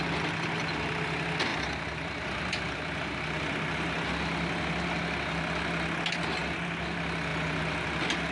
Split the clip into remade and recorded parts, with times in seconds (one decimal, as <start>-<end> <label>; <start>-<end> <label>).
0.0-1.5 recorded; 1.5-3.2 remade; 3.2-8.3 recorded

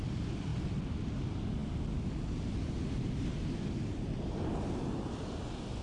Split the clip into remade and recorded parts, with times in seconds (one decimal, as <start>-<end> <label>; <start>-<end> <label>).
0.0-5.8 recorded